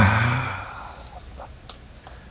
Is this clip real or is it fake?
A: real